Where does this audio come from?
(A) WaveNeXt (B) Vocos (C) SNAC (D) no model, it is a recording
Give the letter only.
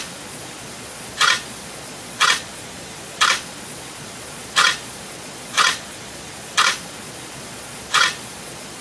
B